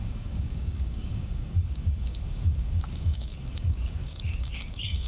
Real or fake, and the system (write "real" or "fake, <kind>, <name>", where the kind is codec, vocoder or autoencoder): fake, codec, DAC